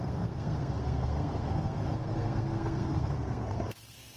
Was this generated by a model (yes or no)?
yes